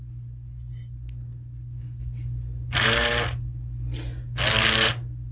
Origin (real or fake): real